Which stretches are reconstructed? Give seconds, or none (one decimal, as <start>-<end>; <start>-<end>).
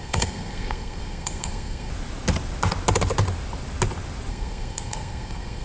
0.0-1.9; 4.3-5.6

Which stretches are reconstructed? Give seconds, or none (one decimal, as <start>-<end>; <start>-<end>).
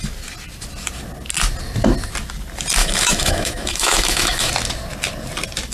2.8-4.5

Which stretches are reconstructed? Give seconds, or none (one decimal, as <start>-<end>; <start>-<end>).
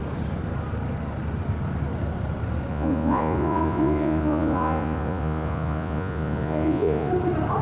2.7-7.1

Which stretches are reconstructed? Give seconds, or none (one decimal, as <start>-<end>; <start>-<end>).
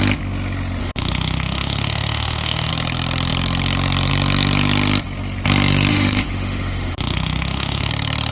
0.8-2.7; 5.9-7.9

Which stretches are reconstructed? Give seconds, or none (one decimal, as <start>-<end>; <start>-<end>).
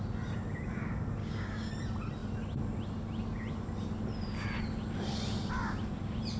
1.2-1.7